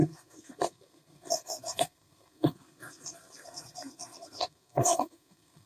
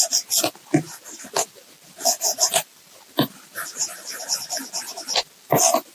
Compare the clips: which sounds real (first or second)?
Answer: second